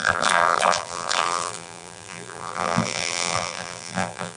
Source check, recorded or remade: remade